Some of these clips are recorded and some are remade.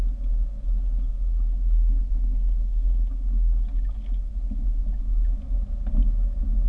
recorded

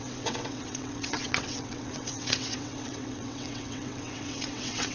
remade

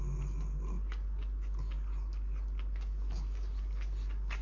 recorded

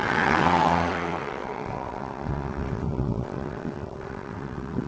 remade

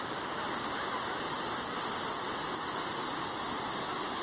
recorded